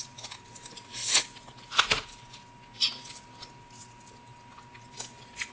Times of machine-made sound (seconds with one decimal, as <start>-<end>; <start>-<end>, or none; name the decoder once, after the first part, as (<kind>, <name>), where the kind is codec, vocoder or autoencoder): none